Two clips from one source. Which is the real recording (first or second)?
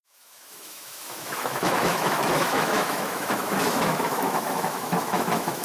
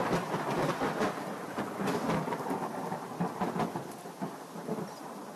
second